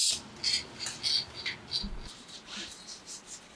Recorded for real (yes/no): yes